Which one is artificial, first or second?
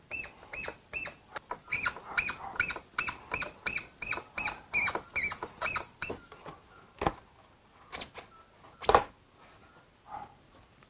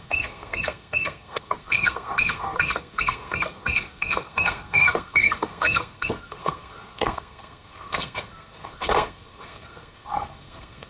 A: second